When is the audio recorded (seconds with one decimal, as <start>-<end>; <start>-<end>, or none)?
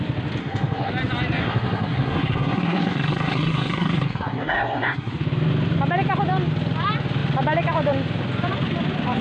0.0-0.4; 0.9-1.4; 5.1-9.2